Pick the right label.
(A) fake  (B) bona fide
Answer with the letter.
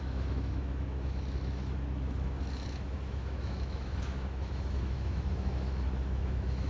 A